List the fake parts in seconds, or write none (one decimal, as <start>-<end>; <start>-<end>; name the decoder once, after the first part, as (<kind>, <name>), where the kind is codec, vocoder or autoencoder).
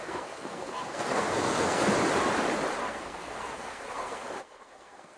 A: 0.0-1.8 (codec, SNAC); 2.8-5.2